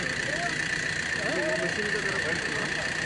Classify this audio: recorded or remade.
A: recorded